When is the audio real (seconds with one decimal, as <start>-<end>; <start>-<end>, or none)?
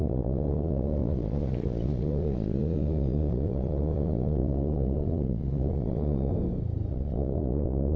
6.3-6.9